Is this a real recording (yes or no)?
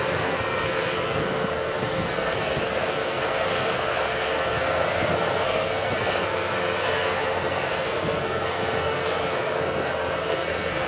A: no